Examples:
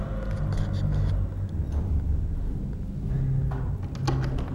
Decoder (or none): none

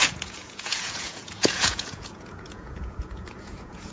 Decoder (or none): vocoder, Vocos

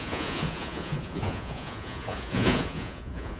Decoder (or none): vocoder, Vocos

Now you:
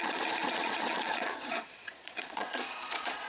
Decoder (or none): vocoder, Vocos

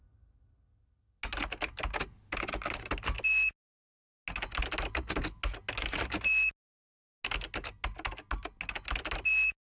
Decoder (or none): none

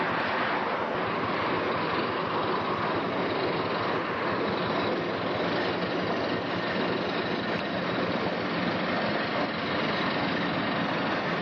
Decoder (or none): none